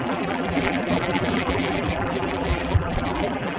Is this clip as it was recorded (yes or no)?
no